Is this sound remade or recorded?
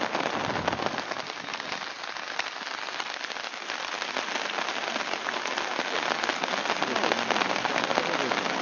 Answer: recorded